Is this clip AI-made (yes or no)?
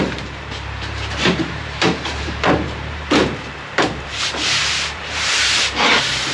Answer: yes